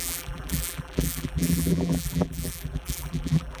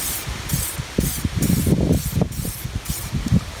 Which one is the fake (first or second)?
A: first